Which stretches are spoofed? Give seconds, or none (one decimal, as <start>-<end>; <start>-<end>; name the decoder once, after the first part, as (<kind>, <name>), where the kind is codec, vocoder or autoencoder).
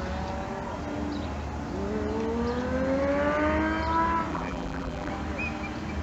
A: 4.3-5.1 (vocoder, BigVGAN v2)